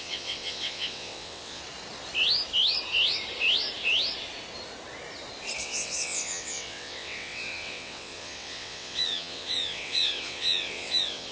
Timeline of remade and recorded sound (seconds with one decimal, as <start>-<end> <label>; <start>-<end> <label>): 0.0-1.6 remade; 1.6-5.6 recorded; 5.6-11.3 remade